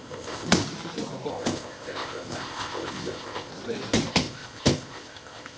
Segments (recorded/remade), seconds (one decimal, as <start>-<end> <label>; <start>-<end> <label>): 0.0-0.6 remade; 0.6-1.3 recorded; 1.3-3.5 remade; 3.5-4.1 recorded; 4.1-5.6 remade